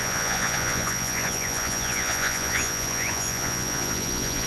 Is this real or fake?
fake